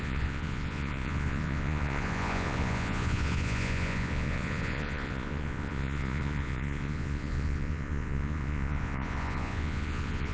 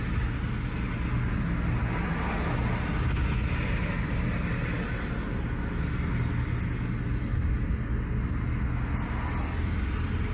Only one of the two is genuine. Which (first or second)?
second